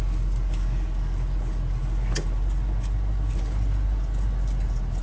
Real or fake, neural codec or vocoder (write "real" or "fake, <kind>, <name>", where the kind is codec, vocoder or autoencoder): real